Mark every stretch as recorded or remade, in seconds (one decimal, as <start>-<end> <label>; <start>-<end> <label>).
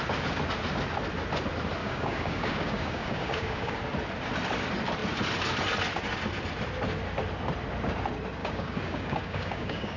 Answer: 0.0-1.8 recorded; 1.8-3.8 remade; 3.8-8.4 recorded; 8.4-10.0 remade